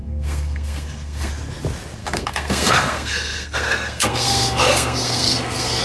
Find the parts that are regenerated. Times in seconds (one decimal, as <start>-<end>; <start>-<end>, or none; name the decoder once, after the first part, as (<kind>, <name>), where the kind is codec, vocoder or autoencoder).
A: 0.0-1.3 (codec, SNAC); 2.0-5.8